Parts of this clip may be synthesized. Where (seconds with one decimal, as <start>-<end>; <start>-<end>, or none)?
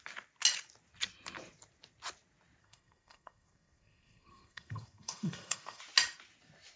2.6-5.8